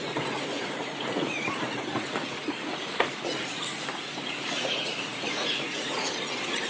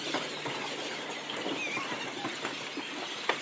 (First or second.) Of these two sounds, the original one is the second